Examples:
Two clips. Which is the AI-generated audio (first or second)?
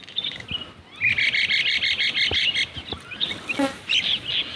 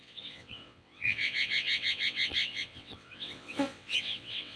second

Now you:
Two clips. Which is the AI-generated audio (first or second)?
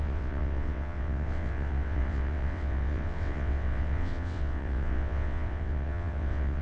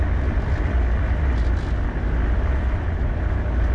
first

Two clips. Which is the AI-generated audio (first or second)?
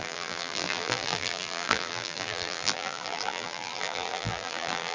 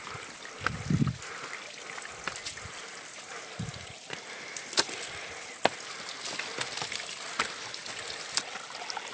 first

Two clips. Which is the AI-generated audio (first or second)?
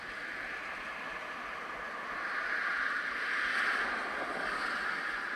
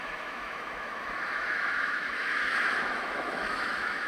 second